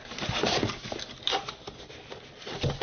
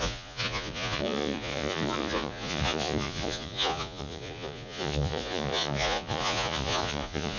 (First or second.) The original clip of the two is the first